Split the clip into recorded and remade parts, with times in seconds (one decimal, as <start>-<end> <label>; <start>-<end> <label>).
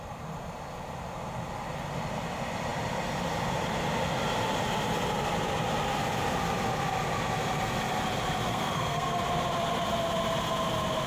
0.0-8.5 recorded; 8.5-9.2 remade; 9.2-11.1 recorded